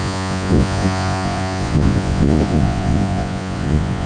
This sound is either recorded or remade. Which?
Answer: remade